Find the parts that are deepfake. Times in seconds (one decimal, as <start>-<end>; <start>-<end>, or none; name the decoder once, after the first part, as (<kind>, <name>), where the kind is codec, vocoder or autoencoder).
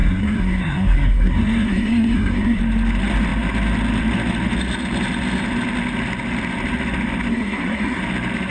0.0-2.6 (codec, SNAC); 7.3-8.0